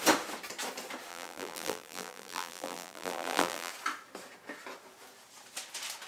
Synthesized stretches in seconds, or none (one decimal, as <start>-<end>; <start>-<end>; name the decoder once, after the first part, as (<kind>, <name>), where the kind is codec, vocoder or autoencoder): 1.1-3.7 (vocoder, BigVGAN v2)